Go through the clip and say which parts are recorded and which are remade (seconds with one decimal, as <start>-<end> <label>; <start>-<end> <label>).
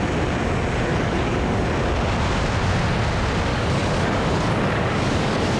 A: 0.0-0.9 recorded; 0.9-1.6 remade; 1.6-3.5 recorded; 3.5-5.6 remade